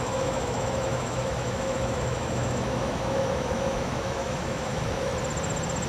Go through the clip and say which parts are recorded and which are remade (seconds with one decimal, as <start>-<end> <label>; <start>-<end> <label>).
0.0-5.1 remade; 5.1-5.9 recorded